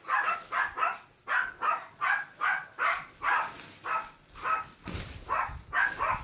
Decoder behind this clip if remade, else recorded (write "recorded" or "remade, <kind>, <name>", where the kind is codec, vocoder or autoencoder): recorded